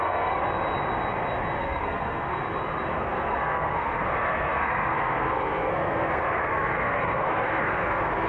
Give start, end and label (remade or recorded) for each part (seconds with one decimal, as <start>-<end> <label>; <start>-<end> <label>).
0.0-0.4 remade; 0.4-1.6 recorded; 1.6-2.4 remade; 2.4-2.9 recorded; 2.9-8.3 remade